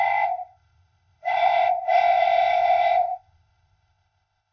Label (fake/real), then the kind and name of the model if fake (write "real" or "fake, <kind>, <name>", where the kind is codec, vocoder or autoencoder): fake, codec, ZipCodec